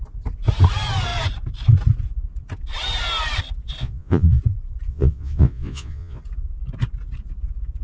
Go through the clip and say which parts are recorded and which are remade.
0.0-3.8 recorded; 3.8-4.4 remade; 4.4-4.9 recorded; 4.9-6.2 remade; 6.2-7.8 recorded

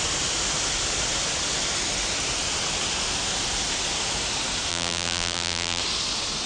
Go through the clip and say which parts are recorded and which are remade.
0.0-4.7 recorded; 4.7-5.8 remade; 5.8-6.5 recorded

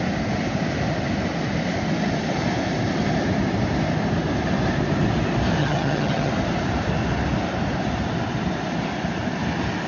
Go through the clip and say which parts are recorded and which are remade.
0.0-5.6 recorded; 5.6-6.3 remade; 6.3-9.9 recorded

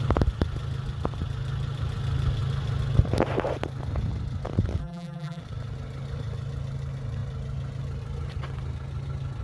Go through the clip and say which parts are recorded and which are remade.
0.0-4.8 recorded; 4.8-5.4 remade; 5.4-9.4 recorded